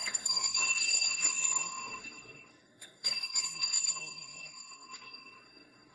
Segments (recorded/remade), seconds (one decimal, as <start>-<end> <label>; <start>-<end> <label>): 0.0-5.9 remade